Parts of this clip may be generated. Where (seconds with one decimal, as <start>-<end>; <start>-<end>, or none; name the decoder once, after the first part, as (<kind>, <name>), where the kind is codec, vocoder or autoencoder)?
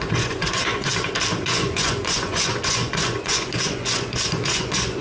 0.0-0.9 (vocoder, Vocos); 1.4-5.0